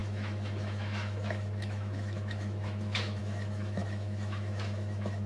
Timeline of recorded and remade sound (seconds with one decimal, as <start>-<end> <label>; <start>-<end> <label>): 0.0-5.3 remade